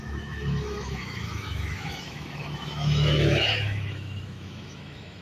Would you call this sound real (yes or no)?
no